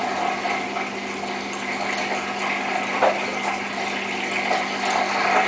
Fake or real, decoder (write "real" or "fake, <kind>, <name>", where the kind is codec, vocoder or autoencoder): real